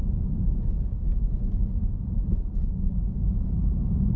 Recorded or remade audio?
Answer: remade